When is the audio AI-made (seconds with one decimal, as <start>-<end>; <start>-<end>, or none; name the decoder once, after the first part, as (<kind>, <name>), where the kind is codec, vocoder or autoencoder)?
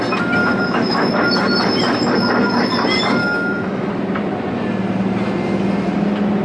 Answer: 0.4-1.1 (autoencoder, DAC-VAE); 3.2-3.9